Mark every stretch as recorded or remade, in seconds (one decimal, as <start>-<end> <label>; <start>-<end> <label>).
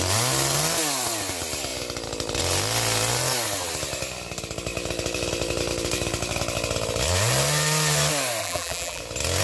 0.0-8.4 recorded; 8.4-9.0 remade; 9.0-9.4 recorded